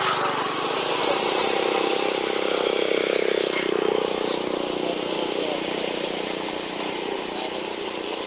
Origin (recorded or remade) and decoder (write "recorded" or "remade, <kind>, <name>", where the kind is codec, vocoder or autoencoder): recorded